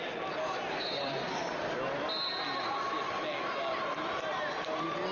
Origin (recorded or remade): recorded